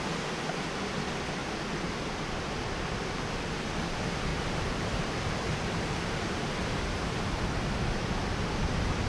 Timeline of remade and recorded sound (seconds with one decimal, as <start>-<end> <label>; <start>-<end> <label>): 0.0-4.3 recorded; 4.3-7.4 remade; 7.4-9.1 recorded